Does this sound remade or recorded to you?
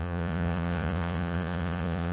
remade